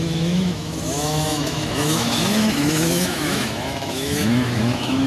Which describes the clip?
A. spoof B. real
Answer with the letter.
A